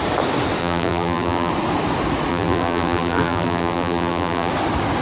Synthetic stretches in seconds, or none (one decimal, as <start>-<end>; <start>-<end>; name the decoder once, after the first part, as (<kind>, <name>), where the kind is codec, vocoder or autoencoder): 0.6-1.5 (vocoder, BigVGAN v2); 2.3-4.5